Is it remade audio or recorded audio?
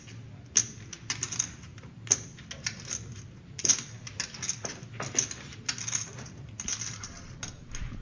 recorded